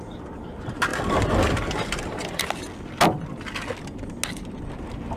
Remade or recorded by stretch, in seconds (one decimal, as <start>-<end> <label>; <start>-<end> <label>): 0.0-0.9 recorded; 0.9-2.4 remade; 2.4-5.2 recorded